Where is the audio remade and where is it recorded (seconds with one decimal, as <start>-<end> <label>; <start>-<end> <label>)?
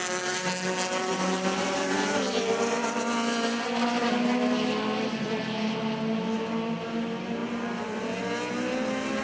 0.0-1.1 recorded; 1.1-3.0 remade; 3.0-7.4 recorded; 7.4-8.2 remade; 8.2-9.2 recorded